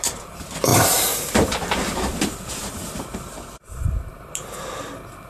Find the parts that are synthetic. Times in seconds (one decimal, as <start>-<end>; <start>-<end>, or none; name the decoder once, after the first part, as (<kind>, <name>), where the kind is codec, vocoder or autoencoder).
0.7-3.9 (vocoder, BigVGAN v2)